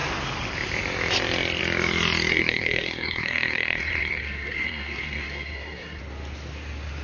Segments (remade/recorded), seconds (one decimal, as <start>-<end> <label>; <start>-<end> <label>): 0.0-2.3 recorded; 2.3-6.0 remade; 6.0-7.0 recorded